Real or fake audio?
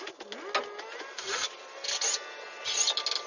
real